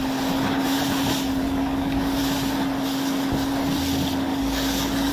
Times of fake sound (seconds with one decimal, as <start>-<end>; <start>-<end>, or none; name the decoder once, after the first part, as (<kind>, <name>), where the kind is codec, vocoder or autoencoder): 1.4-2.2 (codec, DAC); 4.3-5.1